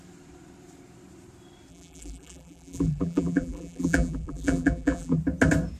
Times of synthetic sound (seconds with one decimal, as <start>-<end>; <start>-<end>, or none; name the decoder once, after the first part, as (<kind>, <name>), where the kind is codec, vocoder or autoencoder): 1.7-5.2 (vocoder, BigVGAN v2)